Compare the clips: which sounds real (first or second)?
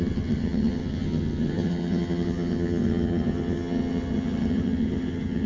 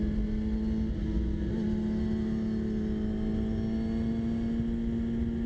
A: second